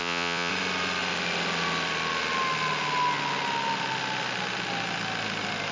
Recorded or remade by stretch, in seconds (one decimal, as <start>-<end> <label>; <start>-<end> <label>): 0.0-0.5 remade; 0.5-5.7 recorded